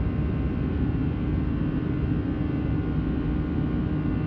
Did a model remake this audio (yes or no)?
no